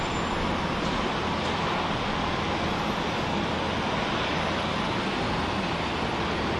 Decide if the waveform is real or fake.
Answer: real